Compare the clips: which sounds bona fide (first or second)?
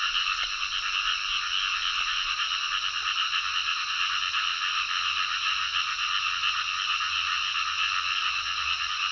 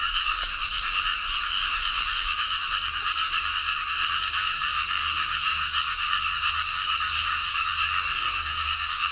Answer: first